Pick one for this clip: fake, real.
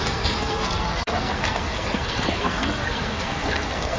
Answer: fake